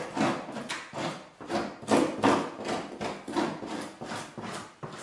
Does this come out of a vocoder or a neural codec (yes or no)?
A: no